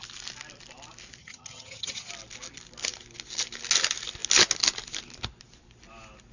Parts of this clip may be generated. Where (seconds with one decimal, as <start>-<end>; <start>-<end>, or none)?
1.2-2.1

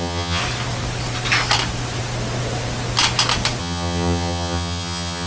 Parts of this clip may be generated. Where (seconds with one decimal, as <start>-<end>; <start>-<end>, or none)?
0.0-0.4; 3.6-5.3

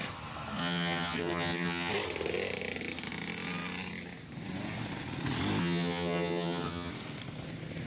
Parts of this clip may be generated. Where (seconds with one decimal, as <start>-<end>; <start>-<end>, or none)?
0.6-1.9; 5.6-6.9

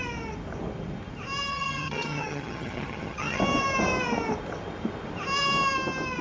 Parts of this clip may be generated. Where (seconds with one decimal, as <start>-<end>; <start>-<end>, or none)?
1.5-3.4

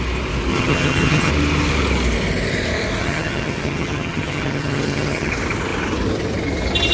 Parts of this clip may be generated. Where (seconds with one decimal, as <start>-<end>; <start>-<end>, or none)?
0.5-1.3; 3.0-5.3